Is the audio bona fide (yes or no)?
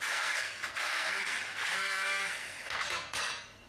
no